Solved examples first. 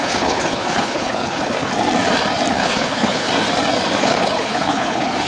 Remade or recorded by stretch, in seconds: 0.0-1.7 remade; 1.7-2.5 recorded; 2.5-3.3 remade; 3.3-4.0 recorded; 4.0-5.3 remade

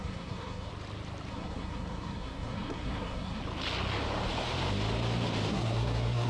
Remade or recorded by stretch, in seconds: 0.0-0.7 remade; 0.7-1.3 recorded; 1.3-3.4 remade; 3.4-5.5 recorded; 5.5-6.3 remade

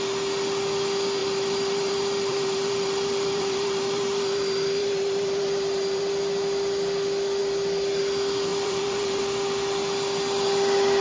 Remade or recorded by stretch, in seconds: 0.0-1.2 recorded; 1.2-6.0 remade; 6.0-8.5 recorded; 8.5-9.2 remade; 9.2-11.0 recorded

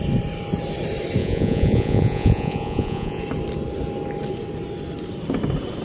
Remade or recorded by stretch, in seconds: 0.0-1.2 recorded; 1.2-3.2 remade; 3.2-5.8 recorded

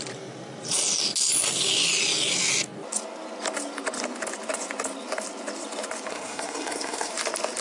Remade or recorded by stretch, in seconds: 0.0-6.1 recorded; 6.1-7.1 remade; 7.1-7.6 recorded

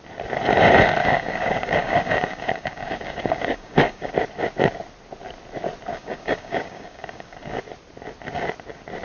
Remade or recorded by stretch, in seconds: 0.0-1.0 recorded; 1.0-4.1 remade; 4.1-5.9 recorded; 5.9-7.6 remade; 7.6-9.0 recorded